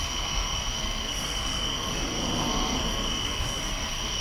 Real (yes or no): no